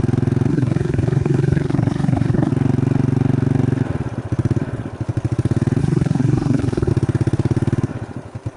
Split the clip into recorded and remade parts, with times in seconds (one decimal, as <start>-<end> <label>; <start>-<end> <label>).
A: 0.0-0.5 recorded; 0.5-2.5 remade; 2.5-5.8 recorded; 5.8-6.9 remade; 6.9-8.6 recorded